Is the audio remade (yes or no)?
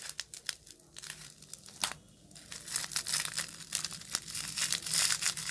no